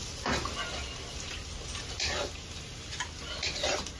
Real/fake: real